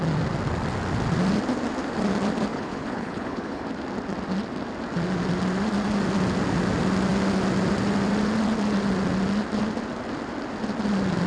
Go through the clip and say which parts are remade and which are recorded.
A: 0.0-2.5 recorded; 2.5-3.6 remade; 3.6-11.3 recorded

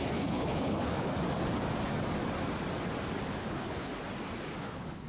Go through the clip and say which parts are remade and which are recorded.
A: 0.0-1.1 remade; 1.1-3.4 recorded; 3.4-3.9 remade; 3.9-4.6 recorded; 4.6-5.1 remade

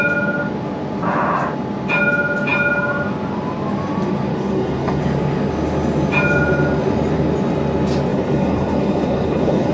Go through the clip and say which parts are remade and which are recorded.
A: 0.0-4.3 recorded; 4.3-5.0 remade; 5.0-8.1 recorded; 8.1-9.7 remade

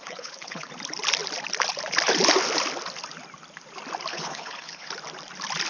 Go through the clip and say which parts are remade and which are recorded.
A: 0.0-0.7 remade; 0.7-4.1 recorded; 4.1-4.9 remade; 4.9-5.7 recorded

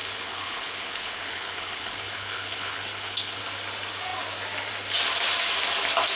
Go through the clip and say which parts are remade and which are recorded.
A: 0.0-3.4 remade; 3.4-6.2 recorded